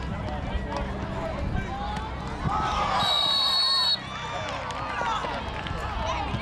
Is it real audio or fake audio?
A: real